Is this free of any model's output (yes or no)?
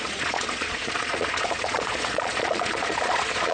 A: no